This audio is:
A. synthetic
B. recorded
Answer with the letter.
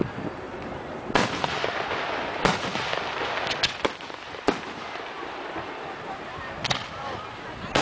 B